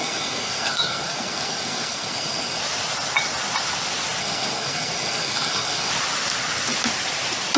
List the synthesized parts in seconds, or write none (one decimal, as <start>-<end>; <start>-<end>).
0.0-2.6; 4.2-5.9